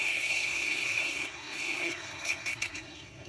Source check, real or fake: fake